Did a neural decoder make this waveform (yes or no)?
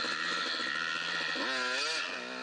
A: no